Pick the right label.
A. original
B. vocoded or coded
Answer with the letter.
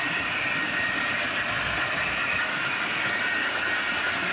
A